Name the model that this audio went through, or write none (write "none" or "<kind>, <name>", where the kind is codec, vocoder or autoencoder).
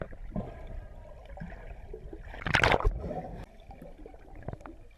none